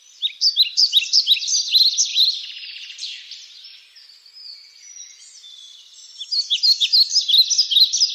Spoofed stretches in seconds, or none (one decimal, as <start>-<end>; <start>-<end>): 0.7-1.2; 2.1-4.3